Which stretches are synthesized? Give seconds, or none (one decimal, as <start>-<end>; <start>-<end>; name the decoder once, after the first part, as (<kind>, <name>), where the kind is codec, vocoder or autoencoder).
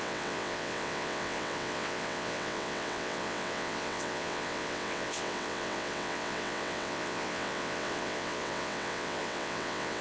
0.0-10.0 (vocoder, WaveNeXt)